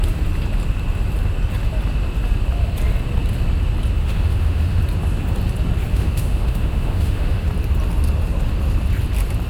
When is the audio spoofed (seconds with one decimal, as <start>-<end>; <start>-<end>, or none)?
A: 4.0-4.8; 5.9-7.5